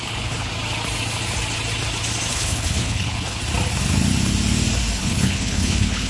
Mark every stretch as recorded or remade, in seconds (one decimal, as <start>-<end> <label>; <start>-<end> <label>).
0.0-0.5 remade; 0.5-2.3 recorded; 2.3-3.4 remade; 3.4-5.0 recorded; 5.0-6.1 remade